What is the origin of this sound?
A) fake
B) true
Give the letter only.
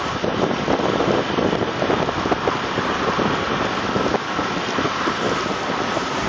B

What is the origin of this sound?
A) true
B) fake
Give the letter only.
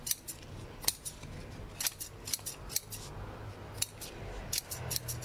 A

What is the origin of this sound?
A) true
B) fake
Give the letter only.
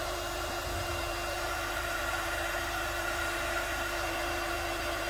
B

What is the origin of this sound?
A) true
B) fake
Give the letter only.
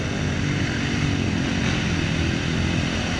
A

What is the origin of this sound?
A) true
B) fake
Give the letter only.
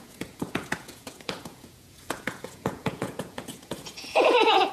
B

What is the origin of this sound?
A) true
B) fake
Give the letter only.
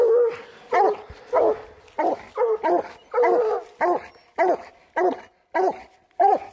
A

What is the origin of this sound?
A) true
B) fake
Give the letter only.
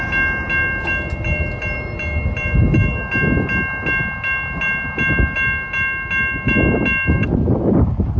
A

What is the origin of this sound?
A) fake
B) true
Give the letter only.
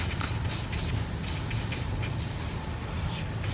B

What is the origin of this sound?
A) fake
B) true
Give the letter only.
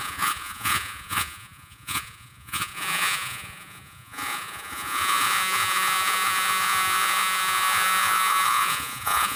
A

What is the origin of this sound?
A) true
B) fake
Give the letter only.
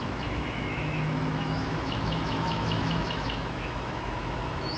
B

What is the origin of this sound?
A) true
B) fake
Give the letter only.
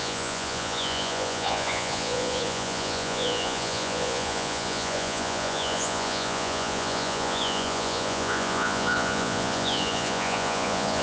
B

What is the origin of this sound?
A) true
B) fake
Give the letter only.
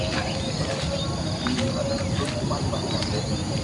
A